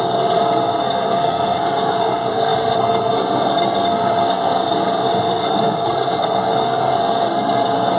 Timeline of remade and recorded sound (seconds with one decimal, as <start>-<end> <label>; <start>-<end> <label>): 0.0-8.0 remade